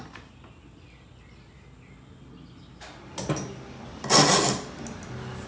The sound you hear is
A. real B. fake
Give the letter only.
A